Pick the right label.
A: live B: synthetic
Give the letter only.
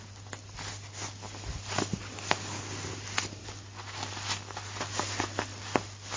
A